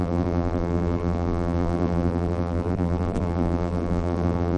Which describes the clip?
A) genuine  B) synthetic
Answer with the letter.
B